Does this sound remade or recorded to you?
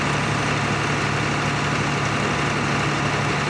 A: recorded